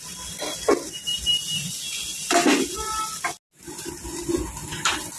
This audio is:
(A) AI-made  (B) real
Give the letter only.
B